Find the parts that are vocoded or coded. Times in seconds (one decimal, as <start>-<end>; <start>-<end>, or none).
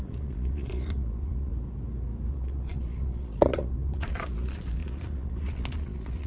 0.0-1.5; 2.3-6.3